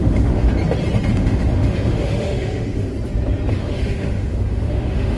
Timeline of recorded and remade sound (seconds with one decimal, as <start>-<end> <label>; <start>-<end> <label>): 0.0-0.5 remade; 0.5-1.1 recorded; 1.1-2.9 remade; 2.9-3.5 recorded; 3.5-5.2 remade